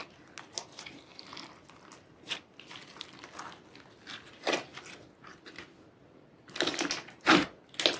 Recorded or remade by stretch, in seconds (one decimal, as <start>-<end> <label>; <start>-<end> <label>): 0.0-8.0 recorded